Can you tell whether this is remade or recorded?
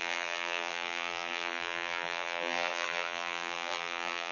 remade